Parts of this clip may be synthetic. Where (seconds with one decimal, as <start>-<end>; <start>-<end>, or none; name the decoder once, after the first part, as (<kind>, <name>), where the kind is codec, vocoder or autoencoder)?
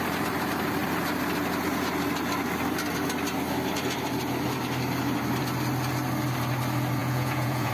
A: 7.0-7.7 (vocoder, Vocos)